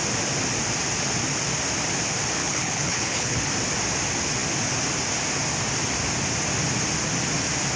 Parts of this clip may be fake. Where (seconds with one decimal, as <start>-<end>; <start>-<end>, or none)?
2.4-3.4